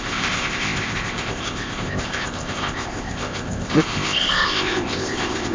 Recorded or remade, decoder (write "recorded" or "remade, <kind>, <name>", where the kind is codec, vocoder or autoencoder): remade, codec, ZipCodec